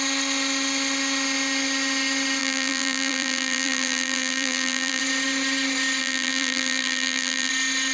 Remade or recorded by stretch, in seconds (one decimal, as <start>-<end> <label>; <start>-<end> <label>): 0.0-2.4 recorded; 2.4-5.0 remade; 5.0-6.0 recorded; 6.0-7.5 remade; 7.5-7.9 recorded